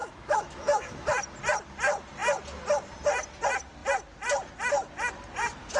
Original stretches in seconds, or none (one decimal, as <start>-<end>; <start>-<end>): 1.1-5.8